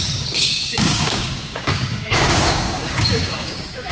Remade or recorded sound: remade